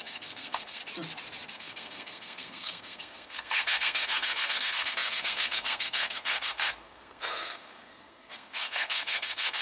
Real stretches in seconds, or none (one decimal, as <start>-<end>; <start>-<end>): 0.8-1.5